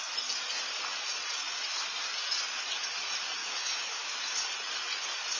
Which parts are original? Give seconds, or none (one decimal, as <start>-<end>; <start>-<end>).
0.0-3.4; 4.2-5.4